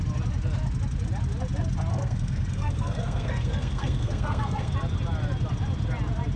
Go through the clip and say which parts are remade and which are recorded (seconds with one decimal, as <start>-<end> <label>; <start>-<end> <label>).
0.0-1.9 recorded; 1.9-4.7 remade; 4.7-6.4 recorded